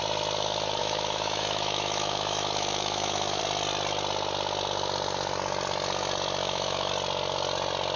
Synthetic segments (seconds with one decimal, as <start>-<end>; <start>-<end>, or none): 0.8-3.4; 6.4-6.9